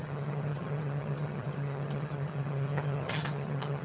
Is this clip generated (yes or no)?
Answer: yes